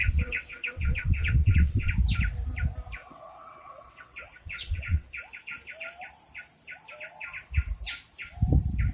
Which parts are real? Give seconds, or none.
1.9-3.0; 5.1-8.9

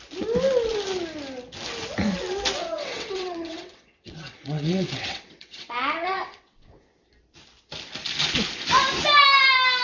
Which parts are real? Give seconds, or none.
0.0-2.6; 6.8-9.8

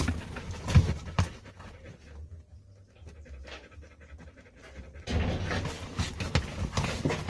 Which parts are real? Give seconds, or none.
0.0-7.3

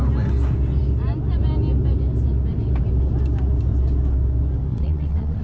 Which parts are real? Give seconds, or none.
0.0-4.7

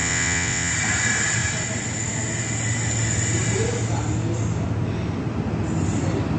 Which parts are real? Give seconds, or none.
0.7-6.4

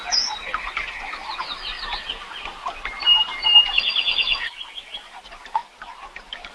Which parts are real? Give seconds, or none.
0.0-6.5